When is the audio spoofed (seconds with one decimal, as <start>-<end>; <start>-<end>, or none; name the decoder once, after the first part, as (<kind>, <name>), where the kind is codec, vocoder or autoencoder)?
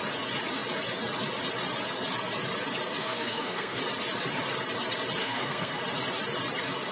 3.0-3.8 (codec, SNAC); 5.2-5.8